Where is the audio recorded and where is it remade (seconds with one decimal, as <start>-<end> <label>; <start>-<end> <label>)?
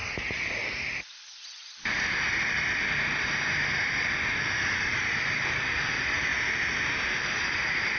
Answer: 0.0-8.0 recorded